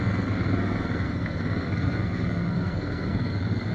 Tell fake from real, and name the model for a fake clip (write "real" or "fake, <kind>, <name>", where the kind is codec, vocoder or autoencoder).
fake, codec, SNAC